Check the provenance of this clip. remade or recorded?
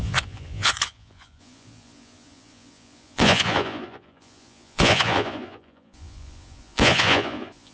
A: remade